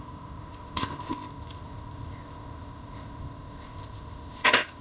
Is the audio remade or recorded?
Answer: remade